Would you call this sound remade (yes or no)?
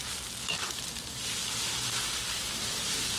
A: no